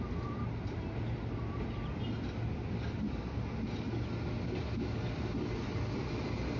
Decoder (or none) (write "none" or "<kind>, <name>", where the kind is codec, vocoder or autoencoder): none